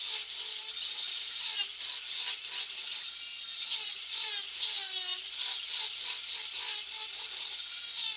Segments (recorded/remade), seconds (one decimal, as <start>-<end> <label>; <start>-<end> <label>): 0.0-8.2 recorded